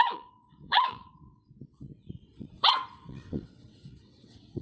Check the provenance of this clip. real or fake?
fake